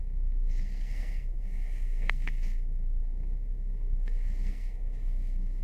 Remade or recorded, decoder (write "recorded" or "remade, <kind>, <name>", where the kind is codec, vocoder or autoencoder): remade, codec, SNAC